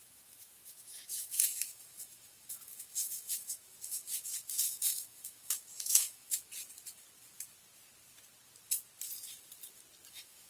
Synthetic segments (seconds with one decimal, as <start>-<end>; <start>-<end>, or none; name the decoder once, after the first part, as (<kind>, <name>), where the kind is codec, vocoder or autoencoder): 0.0-6.5 (autoencoder, DAC-VAE); 10.1-10.5